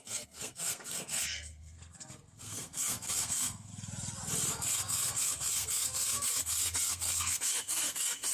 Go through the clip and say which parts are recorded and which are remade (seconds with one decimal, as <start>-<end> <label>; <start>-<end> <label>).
0.0-3.7 remade; 3.7-4.5 recorded; 4.5-8.3 remade